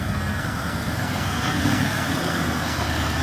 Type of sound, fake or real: fake